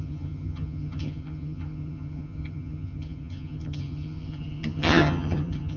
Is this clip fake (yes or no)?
yes